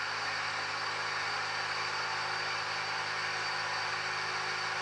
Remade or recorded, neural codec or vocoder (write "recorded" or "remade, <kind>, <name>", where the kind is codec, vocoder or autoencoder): remade, vocoder, BigVGAN v2